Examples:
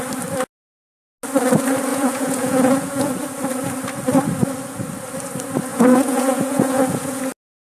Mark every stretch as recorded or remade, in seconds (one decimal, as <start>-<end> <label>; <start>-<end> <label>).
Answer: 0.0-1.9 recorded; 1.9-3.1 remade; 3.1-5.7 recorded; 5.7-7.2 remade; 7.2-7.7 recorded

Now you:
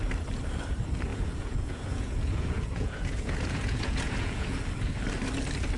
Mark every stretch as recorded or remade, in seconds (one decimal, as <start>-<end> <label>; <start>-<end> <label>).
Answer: 0.0-1.1 recorded; 1.1-4.6 remade; 4.6-5.8 recorded

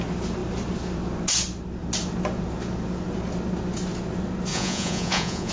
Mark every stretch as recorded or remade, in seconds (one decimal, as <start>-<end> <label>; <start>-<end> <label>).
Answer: 0.0-4.5 recorded; 4.5-5.5 remade